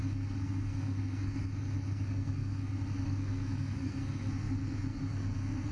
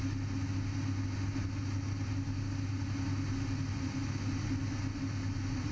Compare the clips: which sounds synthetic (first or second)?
first